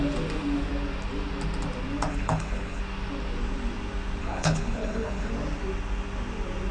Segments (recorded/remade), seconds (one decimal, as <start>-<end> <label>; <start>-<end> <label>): 0.0-2.1 recorded; 2.1-2.8 remade; 2.8-4.2 recorded; 4.2-5.3 remade; 5.3-6.7 recorded

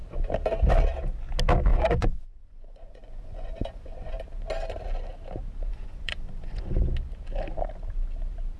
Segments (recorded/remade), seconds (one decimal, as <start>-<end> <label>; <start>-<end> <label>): 0.0-1.7 recorded; 1.7-4.2 remade; 4.2-5.7 recorded; 5.7-6.9 remade; 6.9-8.6 recorded